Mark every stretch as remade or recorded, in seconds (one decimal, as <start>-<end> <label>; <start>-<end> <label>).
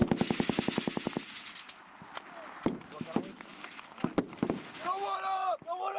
0.0-6.0 recorded